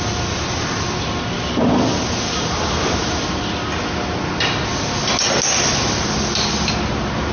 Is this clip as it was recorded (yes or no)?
yes